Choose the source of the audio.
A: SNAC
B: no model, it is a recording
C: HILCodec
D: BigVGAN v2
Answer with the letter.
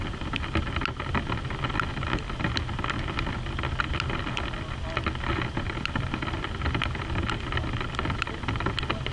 B